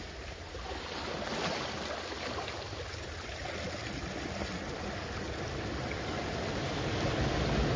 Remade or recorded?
recorded